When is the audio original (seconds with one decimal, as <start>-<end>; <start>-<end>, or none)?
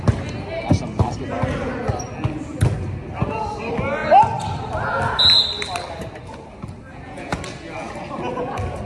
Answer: 0.0-6.9; 7.4-8.9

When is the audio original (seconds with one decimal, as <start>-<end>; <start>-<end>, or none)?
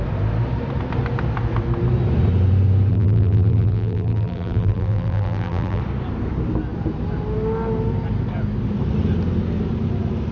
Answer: 0.0-2.9; 5.8-10.3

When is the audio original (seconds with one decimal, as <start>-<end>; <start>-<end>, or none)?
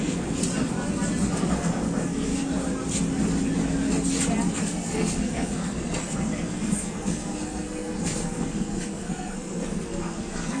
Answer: 0.4-1.4; 2.3-4.5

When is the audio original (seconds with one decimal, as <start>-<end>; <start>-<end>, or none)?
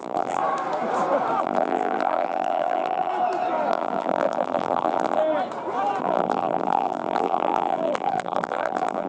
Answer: 0.4-1.4; 3.1-3.7; 5.2-6.0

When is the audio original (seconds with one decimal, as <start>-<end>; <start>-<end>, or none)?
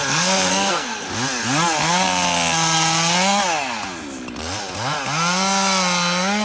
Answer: 1.1-6.4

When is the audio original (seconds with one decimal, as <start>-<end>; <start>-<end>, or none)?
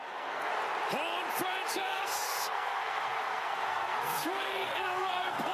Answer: 0.5-1.7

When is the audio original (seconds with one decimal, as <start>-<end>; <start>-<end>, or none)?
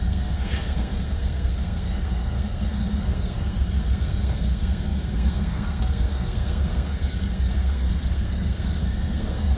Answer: none